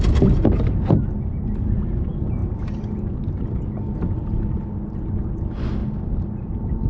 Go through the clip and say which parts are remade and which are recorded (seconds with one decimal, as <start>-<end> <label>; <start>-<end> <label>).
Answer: 0.0-6.9 recorded